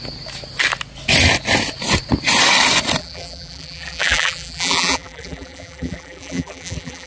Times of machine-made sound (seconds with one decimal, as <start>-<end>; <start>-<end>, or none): 3.0-7.1